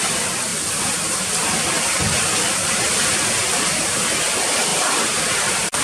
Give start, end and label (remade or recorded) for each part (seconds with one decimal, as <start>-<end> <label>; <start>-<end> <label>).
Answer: 0.0-4.7 recorded; 4.7-5.8 remade